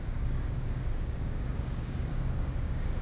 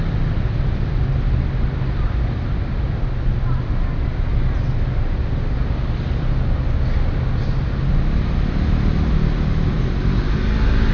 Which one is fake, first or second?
first